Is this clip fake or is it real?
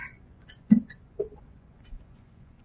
fake